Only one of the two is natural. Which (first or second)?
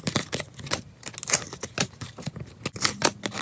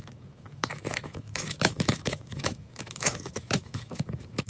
first